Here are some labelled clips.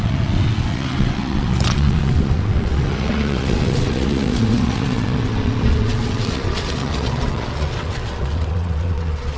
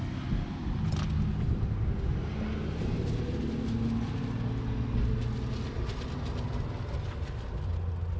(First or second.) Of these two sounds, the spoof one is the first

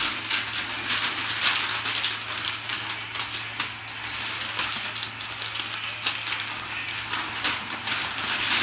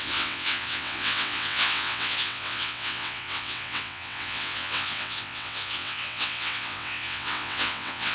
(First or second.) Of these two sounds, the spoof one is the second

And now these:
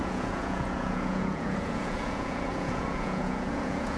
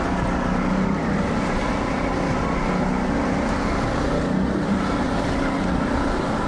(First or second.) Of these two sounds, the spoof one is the first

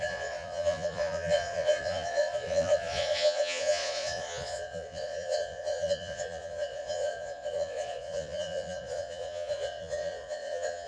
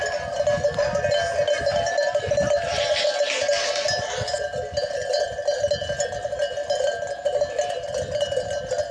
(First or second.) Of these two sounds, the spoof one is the first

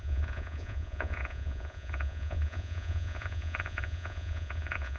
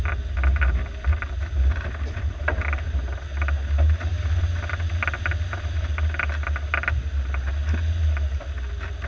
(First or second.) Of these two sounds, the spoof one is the first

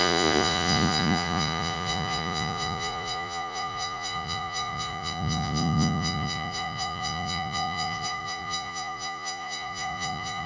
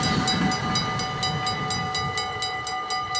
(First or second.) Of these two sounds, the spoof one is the first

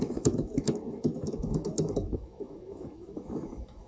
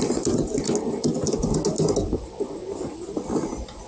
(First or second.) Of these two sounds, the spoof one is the first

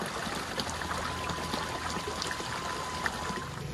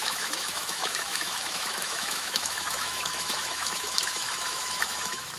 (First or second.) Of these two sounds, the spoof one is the second